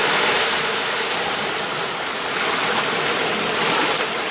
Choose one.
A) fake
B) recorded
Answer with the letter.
B